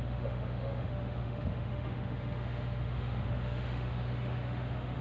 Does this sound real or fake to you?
fake